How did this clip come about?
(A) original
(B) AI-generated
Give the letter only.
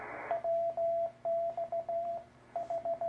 A